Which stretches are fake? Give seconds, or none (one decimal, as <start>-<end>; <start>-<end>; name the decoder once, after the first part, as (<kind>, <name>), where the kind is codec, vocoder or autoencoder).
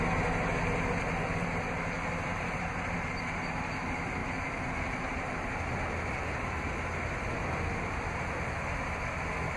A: none